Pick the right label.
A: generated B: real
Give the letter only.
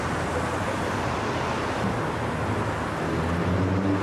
B